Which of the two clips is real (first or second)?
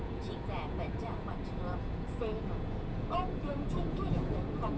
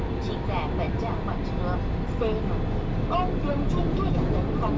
second